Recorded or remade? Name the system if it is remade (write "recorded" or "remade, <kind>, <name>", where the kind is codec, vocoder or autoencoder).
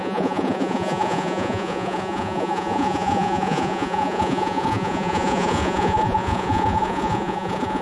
remade, vocoder, Vocos